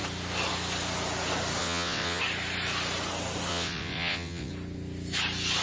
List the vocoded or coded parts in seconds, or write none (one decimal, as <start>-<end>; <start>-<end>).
1.6-2.2; 3.5-4.5

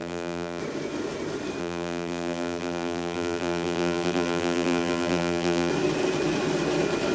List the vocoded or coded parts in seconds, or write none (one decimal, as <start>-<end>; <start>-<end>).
0.0-0.6; 1.6-5.7

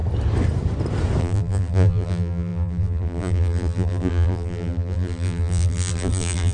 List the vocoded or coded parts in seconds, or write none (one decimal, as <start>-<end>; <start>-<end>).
1.2-6.5

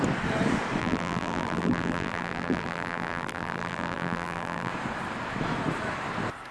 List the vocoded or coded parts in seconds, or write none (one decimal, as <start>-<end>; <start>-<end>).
0.8-4.7

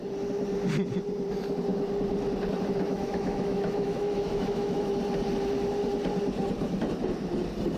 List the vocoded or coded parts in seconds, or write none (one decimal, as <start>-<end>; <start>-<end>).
2.9-4.9

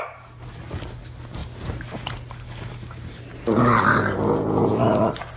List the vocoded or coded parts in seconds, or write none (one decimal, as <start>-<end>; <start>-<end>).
none